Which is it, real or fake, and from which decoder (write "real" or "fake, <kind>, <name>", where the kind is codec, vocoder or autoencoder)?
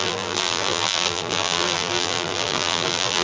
fake, vocoder, BigVGAN v2